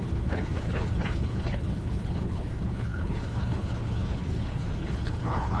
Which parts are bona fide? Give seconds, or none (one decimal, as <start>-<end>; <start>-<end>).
none